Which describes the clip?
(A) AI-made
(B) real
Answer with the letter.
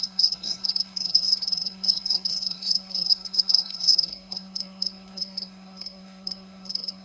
A